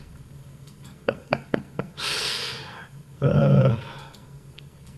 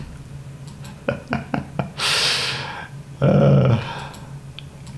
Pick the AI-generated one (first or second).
first